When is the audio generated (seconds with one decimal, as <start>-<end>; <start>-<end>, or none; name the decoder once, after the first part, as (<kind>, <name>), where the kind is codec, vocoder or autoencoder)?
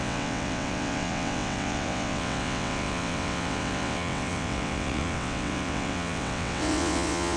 0.0-7.4 (vocoder, WaveNeXt)